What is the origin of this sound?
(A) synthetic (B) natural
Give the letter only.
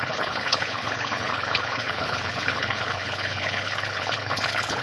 A